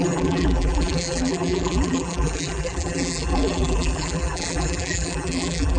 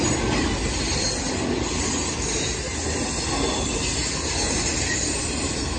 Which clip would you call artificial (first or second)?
first